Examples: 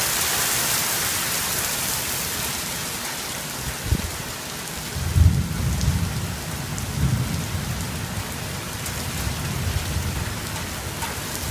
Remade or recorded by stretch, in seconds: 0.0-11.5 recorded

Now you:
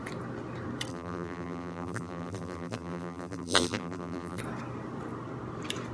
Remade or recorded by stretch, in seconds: 0.0-0.9 recorded; 0.9-4.4 remade; 4.4-5.9 recorded

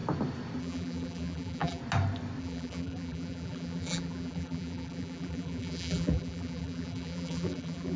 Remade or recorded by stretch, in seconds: 0.0-0.6 recorded; 0.6-1.8 remade; 1.8-2.4 recorded; 2.4-8.0 remade

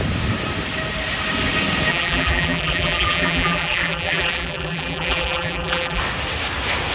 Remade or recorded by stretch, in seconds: 0.0-1.9 recorded; 1.9-6.0 remade; 6.0-6.9 recorded

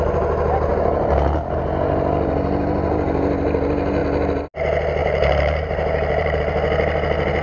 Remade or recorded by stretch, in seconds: 0.0-5.0 recorded; 5.0-6.4 remade; 6.4-7.4 recorded

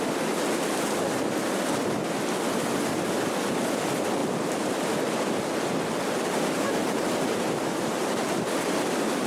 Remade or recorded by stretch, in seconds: 0.0-4.2 recorded; 4.2-4.9 remade; 4.9-6.8 recorded; 6.8-8.7 remade; 8.7-9.3 recorded